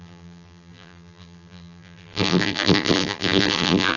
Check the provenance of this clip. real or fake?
fake